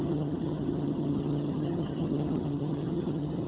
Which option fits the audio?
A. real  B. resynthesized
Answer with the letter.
B